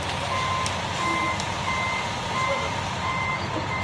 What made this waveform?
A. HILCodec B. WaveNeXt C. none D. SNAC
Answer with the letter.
C